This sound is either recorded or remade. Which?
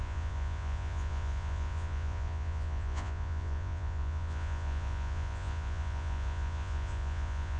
remade